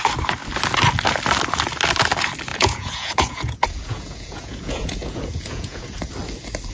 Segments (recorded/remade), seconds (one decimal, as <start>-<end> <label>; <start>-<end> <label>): 0.0-2.5 recorded; 2.5-6.1 remade; 6.1-6.7 recorded

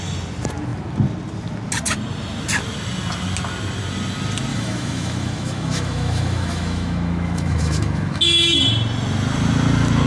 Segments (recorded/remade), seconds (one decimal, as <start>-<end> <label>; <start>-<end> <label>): 0.0-4.5 recorded; 4.5-8.2 remade; 8.2-10.1 recorded

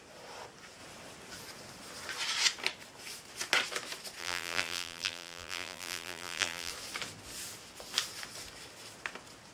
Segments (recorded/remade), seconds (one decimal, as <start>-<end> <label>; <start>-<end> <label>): 0.0-4.2 recorded; 4.2-6.7 remade; 6.7-9.5 recorded

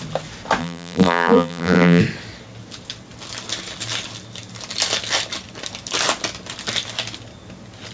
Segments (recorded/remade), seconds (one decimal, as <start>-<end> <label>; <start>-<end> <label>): 0.0-0.6 recorded; 0.6-2.0 remade; 2.0-7.9 recorded

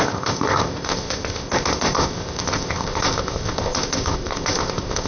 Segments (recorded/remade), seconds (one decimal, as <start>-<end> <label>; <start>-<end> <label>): 0.0-5.1 remade

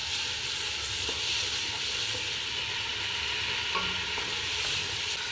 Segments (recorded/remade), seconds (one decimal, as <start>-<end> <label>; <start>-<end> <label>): 0.0-5.3 recorded